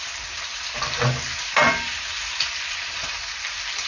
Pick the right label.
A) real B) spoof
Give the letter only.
A